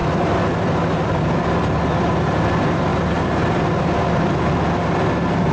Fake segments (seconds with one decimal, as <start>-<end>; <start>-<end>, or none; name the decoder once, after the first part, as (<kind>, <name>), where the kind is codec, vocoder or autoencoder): 2.9-4.3 (vocoder, BigVGAN v2)